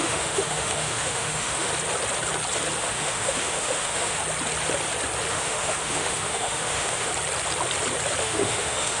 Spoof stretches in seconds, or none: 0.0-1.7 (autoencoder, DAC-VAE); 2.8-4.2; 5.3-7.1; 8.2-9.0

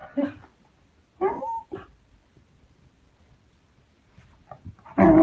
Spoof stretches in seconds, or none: none

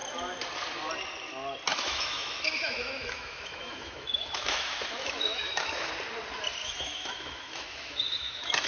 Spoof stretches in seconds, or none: 1.7-5.9 (autoencoder, DAC-VAE); 6.6-8.7

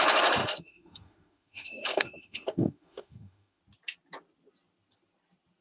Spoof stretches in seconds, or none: 0.4-3.6 (autoencoder, DAC-VAE)

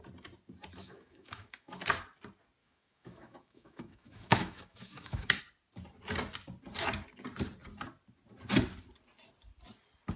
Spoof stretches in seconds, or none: 0.8-1.8 (autoencoder, DAC-VAE); 2.6-5.4

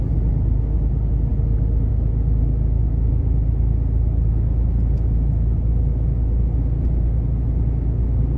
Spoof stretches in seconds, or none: none

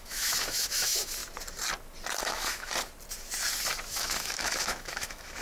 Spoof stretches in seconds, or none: 0.0-1.2 (autoencoder, DAC-VAE); 2.2-2.7; 3.9-5.4